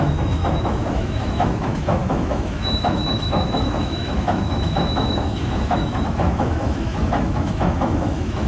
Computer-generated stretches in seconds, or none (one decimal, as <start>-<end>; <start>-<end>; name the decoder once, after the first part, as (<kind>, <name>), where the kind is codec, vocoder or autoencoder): 0.0-8.5 (autoencoder, DAC-VAE)